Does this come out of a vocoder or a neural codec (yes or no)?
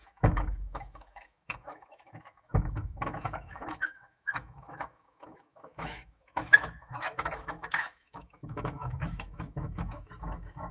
yes